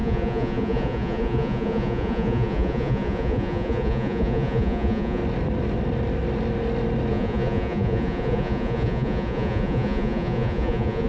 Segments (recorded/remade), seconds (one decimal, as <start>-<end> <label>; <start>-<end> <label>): 0.0-5.2 remade; 5.2-7.1 recorded; 7.1-11.1 remade